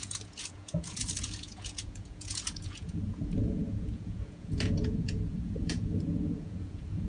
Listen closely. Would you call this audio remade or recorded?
remade